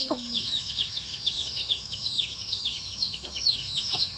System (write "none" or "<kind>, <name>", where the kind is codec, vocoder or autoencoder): autoencoder, DAC-VAE